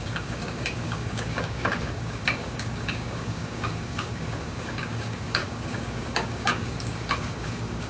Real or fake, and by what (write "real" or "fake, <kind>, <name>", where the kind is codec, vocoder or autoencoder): fake, codec, DAC